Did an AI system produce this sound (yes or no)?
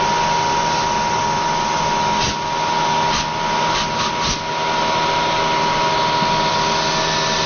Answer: no